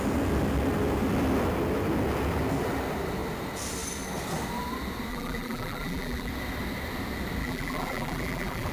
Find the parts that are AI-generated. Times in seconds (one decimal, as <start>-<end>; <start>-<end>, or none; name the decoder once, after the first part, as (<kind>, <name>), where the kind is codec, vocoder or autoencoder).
5.1-6.3 (vocoder, BigVGAN v2); 7.4-8.7